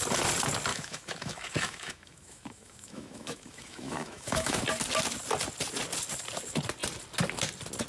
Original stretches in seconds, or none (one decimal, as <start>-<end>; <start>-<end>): 0.0-0.7; 4.6-7.9